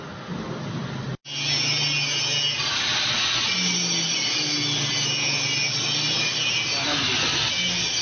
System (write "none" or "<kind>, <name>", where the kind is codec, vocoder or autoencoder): none